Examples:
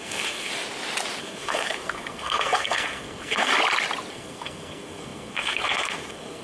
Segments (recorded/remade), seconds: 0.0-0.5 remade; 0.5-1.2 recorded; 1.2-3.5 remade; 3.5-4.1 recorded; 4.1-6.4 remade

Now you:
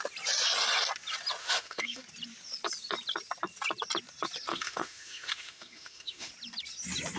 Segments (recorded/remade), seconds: 0.0-1.4 recorded; 1.4-2.0 remade; 2.0-4.5 recorded; 4.5-6.3 remade; 6.3-7.2 recorded